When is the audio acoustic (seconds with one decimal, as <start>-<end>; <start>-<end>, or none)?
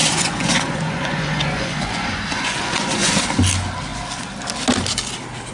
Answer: 3.1-5.5